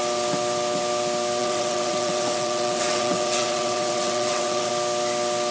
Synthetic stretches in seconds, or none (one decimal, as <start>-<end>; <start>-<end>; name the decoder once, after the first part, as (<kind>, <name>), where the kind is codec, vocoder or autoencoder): 1.4-4.7 (vocoder, WaveNeXt)